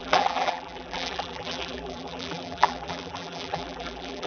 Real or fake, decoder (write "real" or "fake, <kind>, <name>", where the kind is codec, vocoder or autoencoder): fake, vocoder, BigVGAN v2